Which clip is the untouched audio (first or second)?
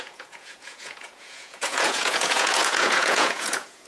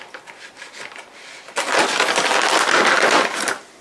second